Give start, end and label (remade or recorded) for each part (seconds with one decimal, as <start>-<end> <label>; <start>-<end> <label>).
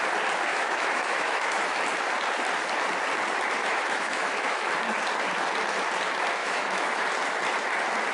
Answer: 0.0-0.5 recorded; 0.5-1.8 remade; 1.8-3.6 recorded; 3.6-4.7 remade; 4.7-6.4 recorded; 6.4-7.0 remade; 7.0-8.1 recorded